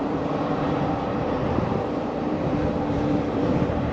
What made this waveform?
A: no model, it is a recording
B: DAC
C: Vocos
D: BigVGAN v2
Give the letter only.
D